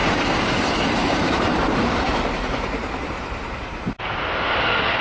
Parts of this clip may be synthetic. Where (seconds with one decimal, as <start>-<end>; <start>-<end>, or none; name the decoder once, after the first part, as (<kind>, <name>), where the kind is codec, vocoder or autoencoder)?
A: 0.0-0.5 (vocoder, BigVGAN v2); 1.0-4.0

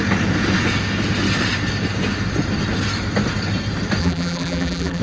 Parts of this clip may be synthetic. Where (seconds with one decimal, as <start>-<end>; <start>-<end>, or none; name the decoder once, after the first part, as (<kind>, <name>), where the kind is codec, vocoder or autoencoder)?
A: 4.0-5.0 (vocoder, BigVGAN v2)

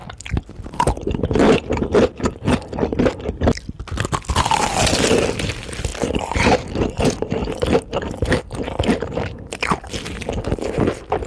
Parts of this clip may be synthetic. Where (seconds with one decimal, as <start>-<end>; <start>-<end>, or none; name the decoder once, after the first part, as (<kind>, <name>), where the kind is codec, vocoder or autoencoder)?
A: 4.3-5.9 (vocoder, BigVGAN v2); 6.8-11.3

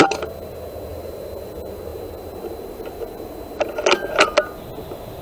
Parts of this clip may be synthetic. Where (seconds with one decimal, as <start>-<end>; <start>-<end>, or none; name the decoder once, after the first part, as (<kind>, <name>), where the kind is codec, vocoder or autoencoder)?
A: 0.9-1.5 (vocoder, BigVGAN v2)

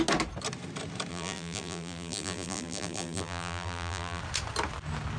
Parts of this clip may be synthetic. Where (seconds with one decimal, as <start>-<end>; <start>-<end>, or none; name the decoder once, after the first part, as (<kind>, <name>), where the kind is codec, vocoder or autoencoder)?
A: 1.1-4.2 (vocoder, BigVGAN v2)